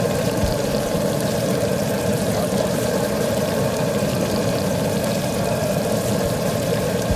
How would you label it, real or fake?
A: fake